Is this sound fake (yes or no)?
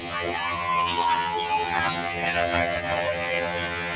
yes